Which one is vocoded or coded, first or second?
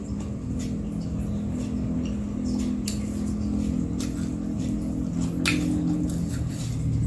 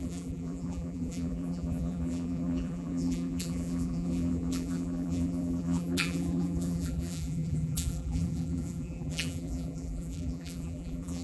second